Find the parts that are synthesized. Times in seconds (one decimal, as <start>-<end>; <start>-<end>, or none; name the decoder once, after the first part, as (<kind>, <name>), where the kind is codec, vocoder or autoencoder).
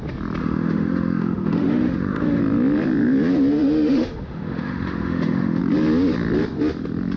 0.4-2.4 (autoencoder, DAC-VAE); 3.5-5.6